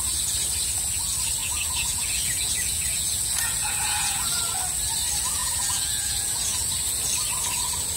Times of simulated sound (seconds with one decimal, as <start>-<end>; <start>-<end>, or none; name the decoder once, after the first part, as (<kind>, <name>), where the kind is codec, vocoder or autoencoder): 1.4-4.4 (vocoder, Vocos); 5.4-6.7